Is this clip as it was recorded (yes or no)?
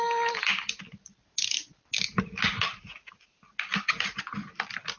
yes